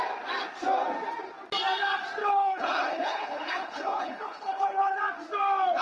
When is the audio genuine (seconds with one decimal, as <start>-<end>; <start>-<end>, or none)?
0.0-2.2; 5.0-5.8